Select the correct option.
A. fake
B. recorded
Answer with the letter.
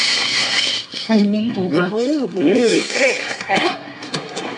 A